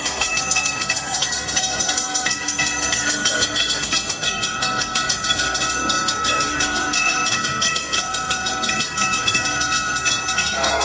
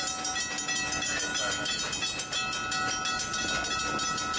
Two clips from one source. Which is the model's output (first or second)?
first